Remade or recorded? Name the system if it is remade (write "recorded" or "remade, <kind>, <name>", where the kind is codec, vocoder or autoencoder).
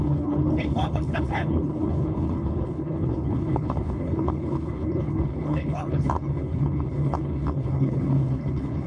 remade, codec, HILCodec